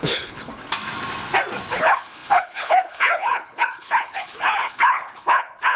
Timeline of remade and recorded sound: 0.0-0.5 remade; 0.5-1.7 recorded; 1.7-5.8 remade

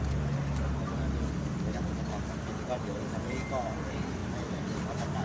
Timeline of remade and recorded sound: 0.0-5.2 recorded

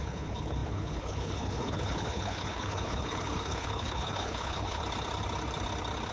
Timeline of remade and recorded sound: 0.0-4.8 remade; 4.8-6.1 recorded

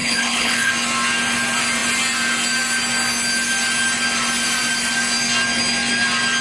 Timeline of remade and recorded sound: 0.0-0.7 remade; 0.7-6.4 recorded

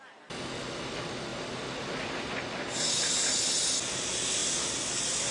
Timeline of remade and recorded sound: 0.0-5.3 recorded

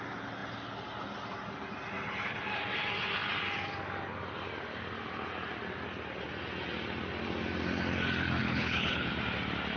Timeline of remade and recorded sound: 0.0-8.4 recorded; 8.4-9.1 remade; 9.1-9.8 recorded

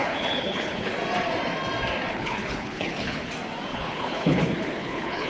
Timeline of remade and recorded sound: 0.0-0.9 remade; 0.9-2.1 recorded; 2.1-3.3 remade; 3.3-3.7 recorded; 3.7-5.3 remade

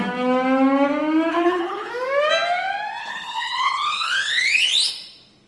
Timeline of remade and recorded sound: 0.0-1.3 recorded; 1.3-1.9 remade; 1.9-3.0 recorded; 3.0-4.9 remade; 4.9-5.5 recorded